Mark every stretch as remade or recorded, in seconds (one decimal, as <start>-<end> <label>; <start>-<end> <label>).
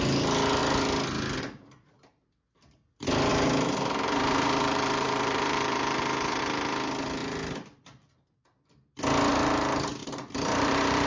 0.0-3.3 recorded; 3.3-6.4 remade; 6.4-10.0 recorded; 10.0-11.1 remade